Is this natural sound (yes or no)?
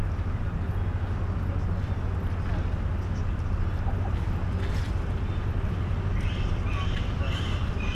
yes